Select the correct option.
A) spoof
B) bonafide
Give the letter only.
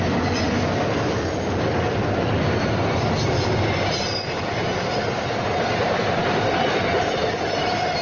B